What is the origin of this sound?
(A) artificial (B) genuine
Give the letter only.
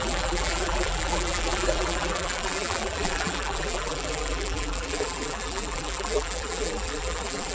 A